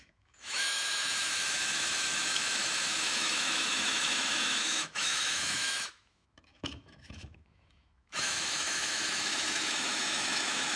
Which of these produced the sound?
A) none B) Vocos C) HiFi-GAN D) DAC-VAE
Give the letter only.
D